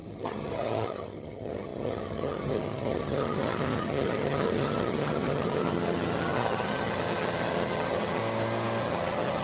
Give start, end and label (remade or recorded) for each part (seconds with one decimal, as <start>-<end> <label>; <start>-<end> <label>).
0.0-8.2 remade; 8.2-8.8 recorded; 8.8-9.4 remade